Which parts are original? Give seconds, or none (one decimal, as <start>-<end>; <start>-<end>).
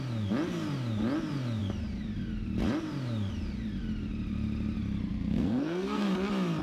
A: 0.0-5.1; 6.1-6.6